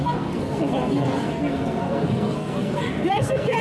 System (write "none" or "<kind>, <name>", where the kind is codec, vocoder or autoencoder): codec, SNAC